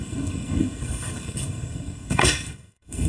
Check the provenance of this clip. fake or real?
fake